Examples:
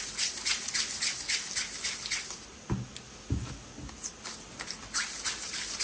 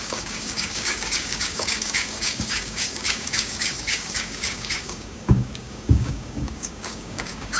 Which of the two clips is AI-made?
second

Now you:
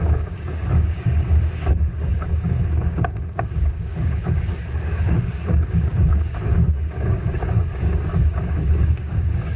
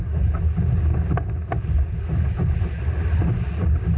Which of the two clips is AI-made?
first